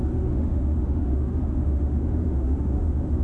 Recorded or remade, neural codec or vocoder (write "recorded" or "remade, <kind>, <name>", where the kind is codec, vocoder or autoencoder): remade, autoencoder, DAC-VAE